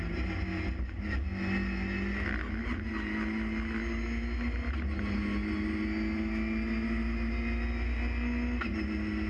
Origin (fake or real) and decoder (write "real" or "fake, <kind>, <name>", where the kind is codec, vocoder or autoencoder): real